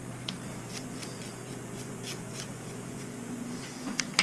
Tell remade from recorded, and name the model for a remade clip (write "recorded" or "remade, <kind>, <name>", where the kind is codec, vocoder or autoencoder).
remade, vocoder, Vocos